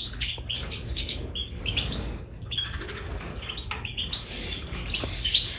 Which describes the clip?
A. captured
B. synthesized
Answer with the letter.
B